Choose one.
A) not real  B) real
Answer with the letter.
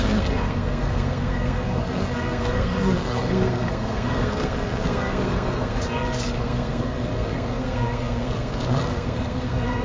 A